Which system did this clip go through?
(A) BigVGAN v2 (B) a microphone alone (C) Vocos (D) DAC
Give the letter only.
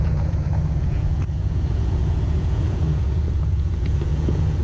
C